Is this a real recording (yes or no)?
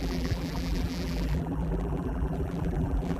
no